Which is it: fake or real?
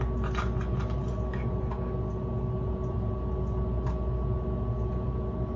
real